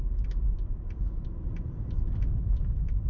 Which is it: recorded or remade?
recorded